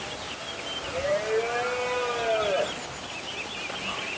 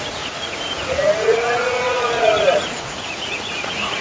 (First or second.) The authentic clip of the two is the first